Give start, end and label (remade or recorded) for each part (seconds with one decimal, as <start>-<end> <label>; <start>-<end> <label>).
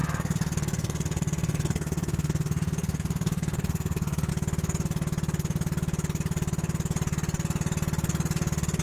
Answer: 0.0-4.3 remade; 4.3-8.8 recorded